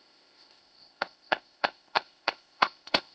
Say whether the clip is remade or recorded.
remade